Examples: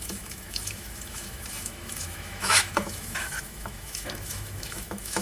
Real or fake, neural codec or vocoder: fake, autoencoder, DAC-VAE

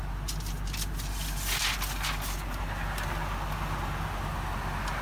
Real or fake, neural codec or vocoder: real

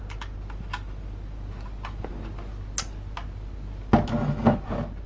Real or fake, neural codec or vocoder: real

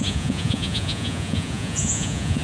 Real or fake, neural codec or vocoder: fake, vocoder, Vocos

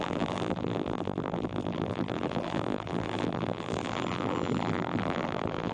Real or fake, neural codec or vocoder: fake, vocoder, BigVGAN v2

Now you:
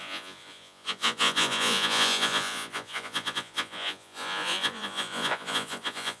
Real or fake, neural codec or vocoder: fake, vocoder, Vocos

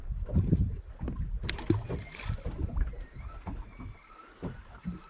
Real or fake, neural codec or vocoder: real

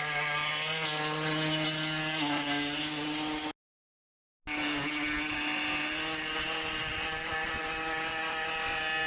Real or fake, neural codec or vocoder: real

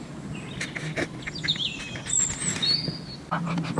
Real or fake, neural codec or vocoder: real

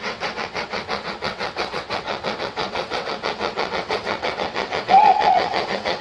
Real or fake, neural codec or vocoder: fake, vocoder, WaveNeXt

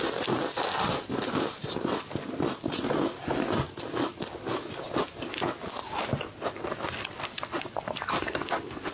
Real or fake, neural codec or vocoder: real